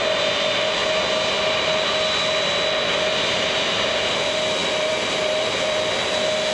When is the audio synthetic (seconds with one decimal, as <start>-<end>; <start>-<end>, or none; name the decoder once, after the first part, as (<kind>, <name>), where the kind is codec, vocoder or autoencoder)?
4.6-6.1 (vocoder, BigVGAN v2)